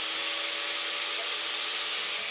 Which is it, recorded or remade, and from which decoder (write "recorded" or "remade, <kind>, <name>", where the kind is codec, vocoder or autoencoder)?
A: recorded